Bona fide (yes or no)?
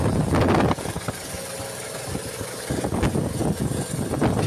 yes